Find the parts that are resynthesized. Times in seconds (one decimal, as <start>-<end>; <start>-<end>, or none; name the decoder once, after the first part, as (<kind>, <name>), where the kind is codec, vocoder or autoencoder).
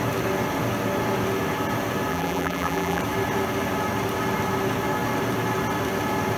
2.1-3.0 (vocoder, BigVGAN v2)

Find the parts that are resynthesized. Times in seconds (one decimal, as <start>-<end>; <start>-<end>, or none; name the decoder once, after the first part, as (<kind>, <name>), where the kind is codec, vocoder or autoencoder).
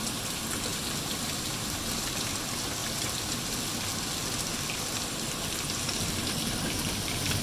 0.7-1.3 (vocoder, BigVGAN v2); 2.8-3.6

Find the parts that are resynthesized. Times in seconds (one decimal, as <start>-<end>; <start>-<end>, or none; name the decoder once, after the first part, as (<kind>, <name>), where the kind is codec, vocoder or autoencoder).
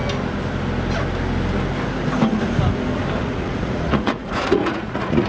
3.2-5.3 (vocoder, Vocos)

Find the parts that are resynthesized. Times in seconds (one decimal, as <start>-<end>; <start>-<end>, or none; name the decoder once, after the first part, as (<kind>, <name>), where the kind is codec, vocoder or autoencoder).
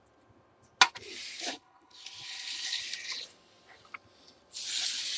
1.5-2.8 (codec, HILCodec)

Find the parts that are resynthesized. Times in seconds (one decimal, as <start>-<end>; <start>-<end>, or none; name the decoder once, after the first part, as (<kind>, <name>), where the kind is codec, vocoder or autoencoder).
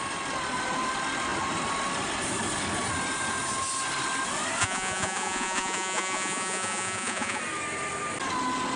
4.6-7.4 (vocoder, Vocos)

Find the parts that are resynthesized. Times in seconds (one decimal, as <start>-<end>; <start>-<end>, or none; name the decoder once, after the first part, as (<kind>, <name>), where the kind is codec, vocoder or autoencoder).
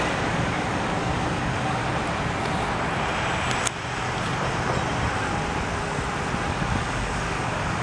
0.0-1.8 (codec, DAC); 6.5-7.8